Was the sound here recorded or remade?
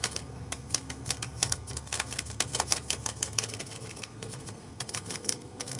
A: remade